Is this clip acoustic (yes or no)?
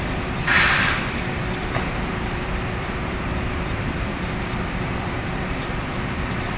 no